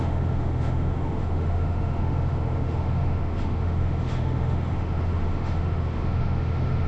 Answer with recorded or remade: remade